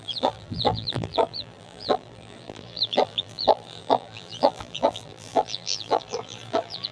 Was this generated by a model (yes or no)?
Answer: yes